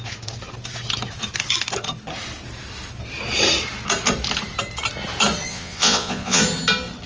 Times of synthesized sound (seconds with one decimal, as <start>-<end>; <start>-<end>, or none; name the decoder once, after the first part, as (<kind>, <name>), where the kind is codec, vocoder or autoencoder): 5.5-6.4 (vocoder, Vocos)